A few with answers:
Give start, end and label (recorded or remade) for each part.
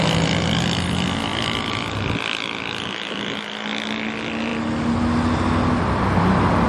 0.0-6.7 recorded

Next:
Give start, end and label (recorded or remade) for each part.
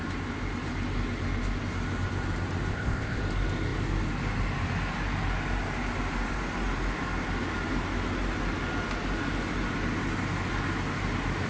0.0-2.7 recorded; 2.7-3.2 remade; 3.2-11.5 recorded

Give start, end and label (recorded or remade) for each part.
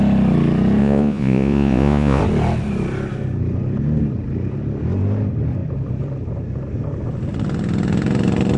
0.0-0.8 recorded; 0.8-2.2 remade; 2.2-8.6 recorded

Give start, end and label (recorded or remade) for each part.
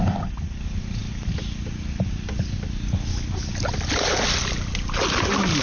0.0-5.6 recorded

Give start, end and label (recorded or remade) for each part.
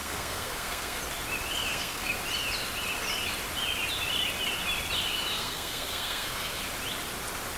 0.0-1.0 remade; 1.0-1.7 recorded; 1.7-2.2 remade; 2.2-5.3 recorded; 5.3-6.6 remade; 6.6-7.6 recorded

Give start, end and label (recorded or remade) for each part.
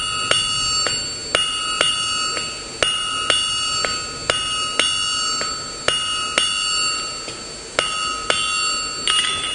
0.0-9.5 recorded